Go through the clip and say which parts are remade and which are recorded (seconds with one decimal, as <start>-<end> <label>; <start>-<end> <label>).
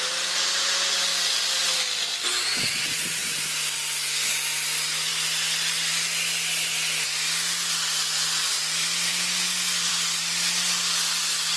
0.0-11.6 recorded